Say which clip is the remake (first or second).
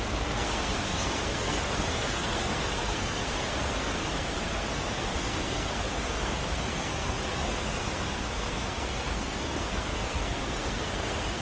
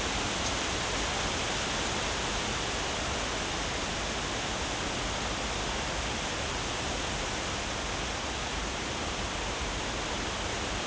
first